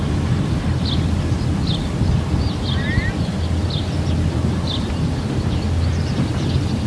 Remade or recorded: recorded